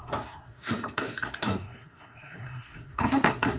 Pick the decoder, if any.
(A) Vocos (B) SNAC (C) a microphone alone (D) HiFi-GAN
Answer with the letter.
B